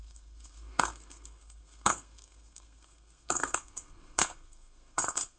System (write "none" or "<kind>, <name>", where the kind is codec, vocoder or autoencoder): codec, SNAC